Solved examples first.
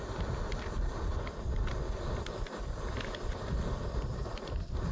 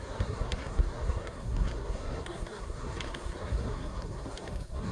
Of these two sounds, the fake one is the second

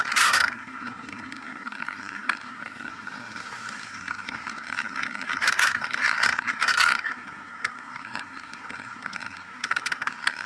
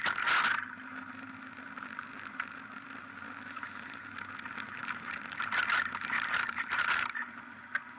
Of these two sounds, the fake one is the first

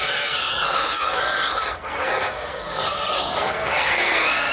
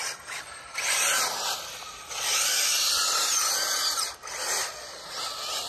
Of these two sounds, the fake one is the first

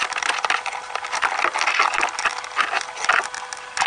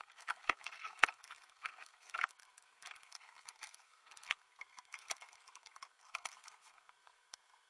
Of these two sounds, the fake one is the second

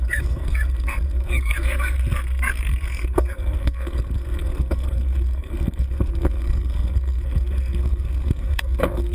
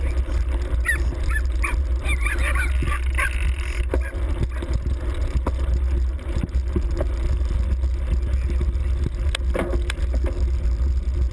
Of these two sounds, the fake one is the first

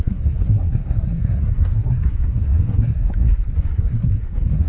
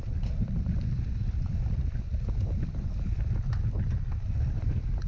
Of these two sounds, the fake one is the first